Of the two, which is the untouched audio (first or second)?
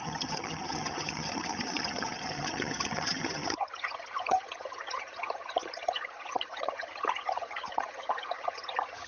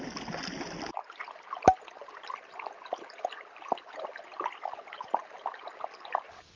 second